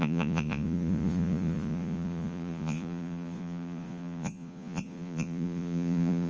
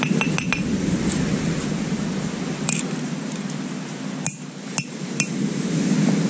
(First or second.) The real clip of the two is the second